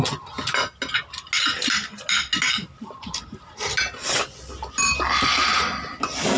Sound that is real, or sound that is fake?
real